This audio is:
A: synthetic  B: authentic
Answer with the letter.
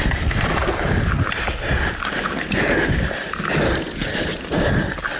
B